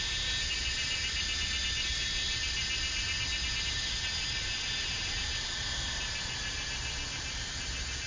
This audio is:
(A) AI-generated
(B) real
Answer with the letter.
B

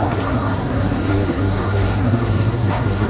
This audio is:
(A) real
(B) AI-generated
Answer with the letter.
B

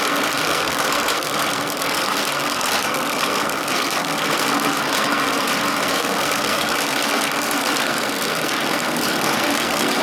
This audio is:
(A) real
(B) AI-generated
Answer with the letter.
B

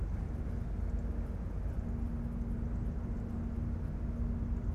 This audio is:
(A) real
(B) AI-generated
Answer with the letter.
A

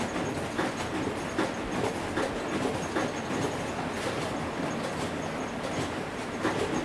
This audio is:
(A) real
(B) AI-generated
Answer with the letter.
A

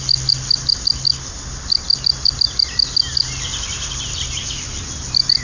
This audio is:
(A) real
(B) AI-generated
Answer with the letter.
A